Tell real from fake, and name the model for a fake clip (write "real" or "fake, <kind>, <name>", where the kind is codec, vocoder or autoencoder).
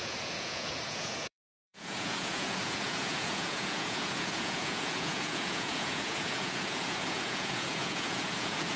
fake, vocoder, Vocos